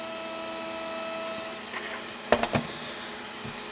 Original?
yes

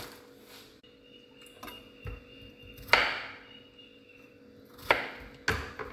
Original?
yes